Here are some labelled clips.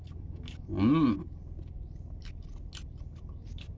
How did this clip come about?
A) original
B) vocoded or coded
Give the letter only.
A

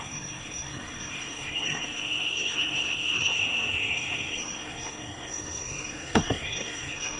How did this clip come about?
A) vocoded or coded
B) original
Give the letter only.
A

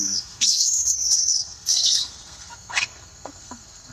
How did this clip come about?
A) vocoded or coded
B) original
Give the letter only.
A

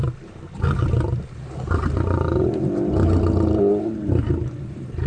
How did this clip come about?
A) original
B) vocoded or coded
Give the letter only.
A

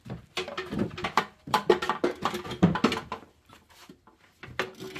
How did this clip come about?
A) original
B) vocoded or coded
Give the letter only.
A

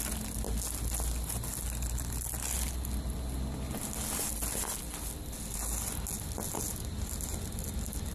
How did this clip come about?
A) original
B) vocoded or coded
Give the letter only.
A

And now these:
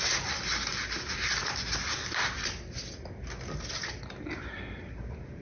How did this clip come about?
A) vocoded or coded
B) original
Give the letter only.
B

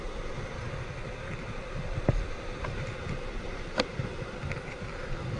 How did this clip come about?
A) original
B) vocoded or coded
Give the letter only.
A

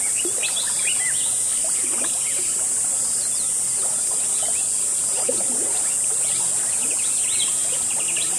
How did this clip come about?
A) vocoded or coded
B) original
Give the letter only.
B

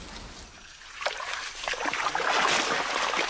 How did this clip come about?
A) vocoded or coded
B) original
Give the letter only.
B